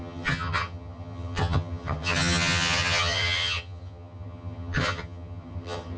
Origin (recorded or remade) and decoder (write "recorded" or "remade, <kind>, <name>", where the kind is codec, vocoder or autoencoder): remade, vocoder, HiFi-GAN